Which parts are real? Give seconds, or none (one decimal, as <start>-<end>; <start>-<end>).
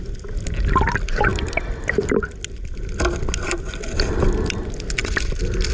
0.0-5.7